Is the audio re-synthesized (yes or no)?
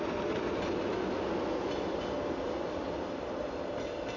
no